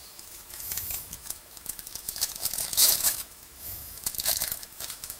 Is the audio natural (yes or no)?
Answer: no